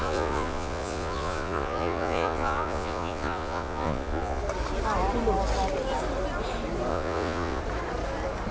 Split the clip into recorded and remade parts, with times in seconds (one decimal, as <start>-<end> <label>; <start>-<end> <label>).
0.0-4.4 remade; 4.4-6.9 recorded; 6.9-7.6 remade; 7.6-8.5 recorded